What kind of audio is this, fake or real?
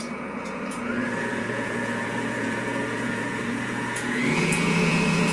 fake